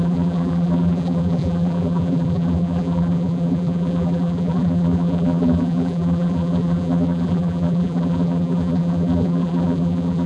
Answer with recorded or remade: remade